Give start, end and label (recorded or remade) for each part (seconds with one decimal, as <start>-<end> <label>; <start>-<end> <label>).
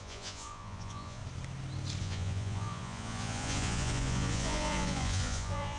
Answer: 0.0-1.2 remade; 1.2-2.0 recorded; 2.0-5.8 remade